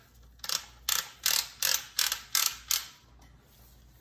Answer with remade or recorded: recorded